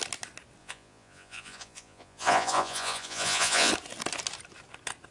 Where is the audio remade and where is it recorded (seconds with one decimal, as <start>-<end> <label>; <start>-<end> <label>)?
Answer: 0.0-0.6 recorded; 0.6-3.7 remade; 3.7-5.1 recorded